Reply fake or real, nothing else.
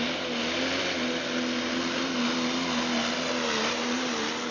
real